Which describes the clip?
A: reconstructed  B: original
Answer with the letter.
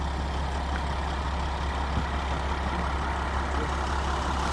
B